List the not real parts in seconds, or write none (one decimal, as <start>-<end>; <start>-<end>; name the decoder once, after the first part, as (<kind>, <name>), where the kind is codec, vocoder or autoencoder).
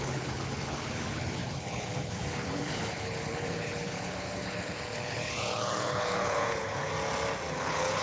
0.0-6.9 (codec, HILCodec); 7.5-8.0